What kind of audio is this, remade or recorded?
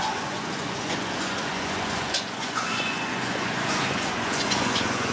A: remade